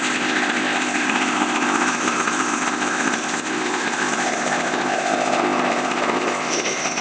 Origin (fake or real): fake